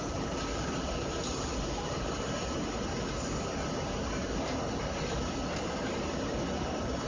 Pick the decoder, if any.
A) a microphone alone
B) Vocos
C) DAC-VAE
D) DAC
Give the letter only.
A